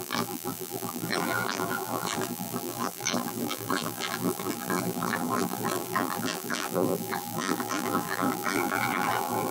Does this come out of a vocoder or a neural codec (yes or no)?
yes